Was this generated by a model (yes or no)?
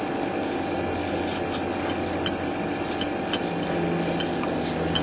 no